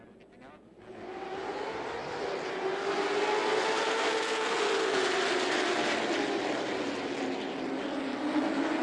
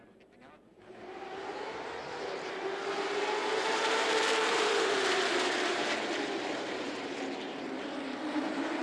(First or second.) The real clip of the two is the first